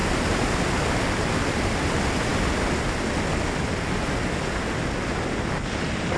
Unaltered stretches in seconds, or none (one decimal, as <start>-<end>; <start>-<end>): 0.6-6.2

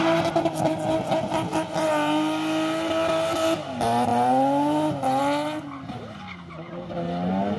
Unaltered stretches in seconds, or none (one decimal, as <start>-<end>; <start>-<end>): 0.0-7.6